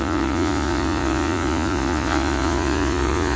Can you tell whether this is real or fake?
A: fake